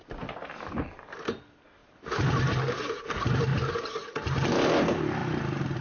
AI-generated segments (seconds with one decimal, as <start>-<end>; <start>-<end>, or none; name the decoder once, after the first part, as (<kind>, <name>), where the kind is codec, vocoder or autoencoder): 0.0-3.5 (vocoder, BigVGAN v2); 4.5-5.2